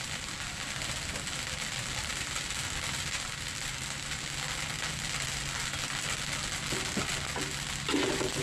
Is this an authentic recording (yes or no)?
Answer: yes